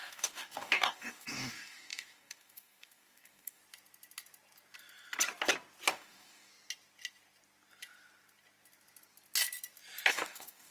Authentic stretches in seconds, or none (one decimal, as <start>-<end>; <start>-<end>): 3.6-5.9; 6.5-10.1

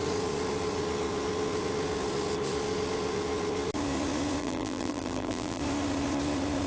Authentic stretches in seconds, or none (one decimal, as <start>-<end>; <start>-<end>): 0.0-4.4; 5.6-6.7

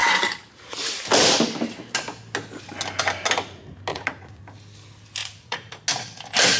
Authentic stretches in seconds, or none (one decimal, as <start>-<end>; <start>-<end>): 0.0-3.9; 4.4-5.2; 5.8-6.6